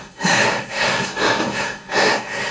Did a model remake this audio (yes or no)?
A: yes